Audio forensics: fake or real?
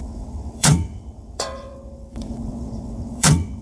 fake